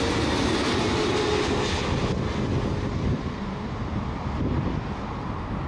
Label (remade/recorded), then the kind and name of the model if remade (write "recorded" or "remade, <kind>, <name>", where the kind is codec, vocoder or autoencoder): recorded